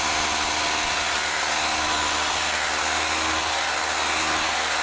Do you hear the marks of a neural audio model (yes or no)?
no